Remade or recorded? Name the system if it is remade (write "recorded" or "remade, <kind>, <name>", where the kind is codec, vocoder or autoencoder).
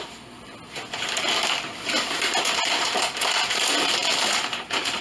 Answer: recorded